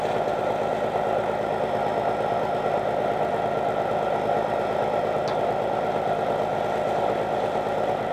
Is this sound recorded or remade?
recorded